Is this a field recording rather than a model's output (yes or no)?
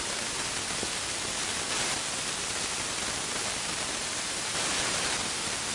yes